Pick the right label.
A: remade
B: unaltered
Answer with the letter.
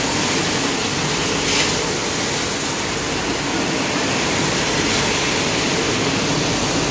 B